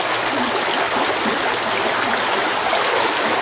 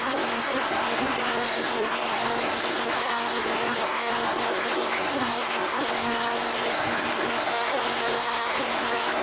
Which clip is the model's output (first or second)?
second